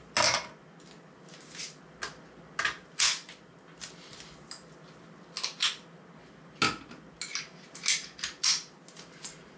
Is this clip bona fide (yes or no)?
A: yes